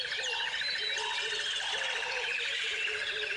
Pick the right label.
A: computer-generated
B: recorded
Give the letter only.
B